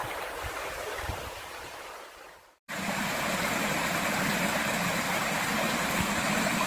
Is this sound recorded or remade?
remade